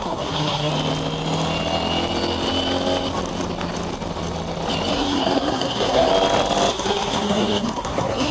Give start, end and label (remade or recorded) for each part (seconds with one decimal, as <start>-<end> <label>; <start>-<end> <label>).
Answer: 0.0-0.7 remade; 0.7-4.9 recorded; 4.9-6.1 remade; 6.1-6.7 recorded; 6.7-8.3 remade